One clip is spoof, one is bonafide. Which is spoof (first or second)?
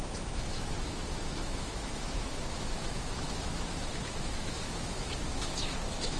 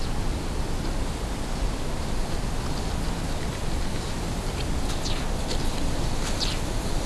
first